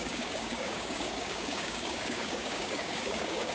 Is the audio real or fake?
fake